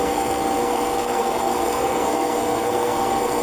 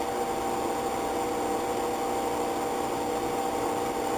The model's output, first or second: first